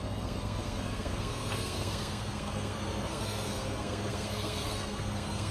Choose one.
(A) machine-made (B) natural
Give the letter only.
A